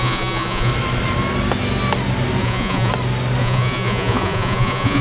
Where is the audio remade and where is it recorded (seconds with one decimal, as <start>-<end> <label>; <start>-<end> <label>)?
0.0-0.7 remade; 0.7-2.4 recorded; 2.4-2.9 remade; 2.9-3.4 recorded; 3.4-5.0 remade